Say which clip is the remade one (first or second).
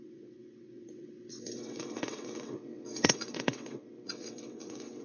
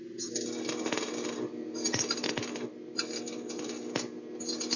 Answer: first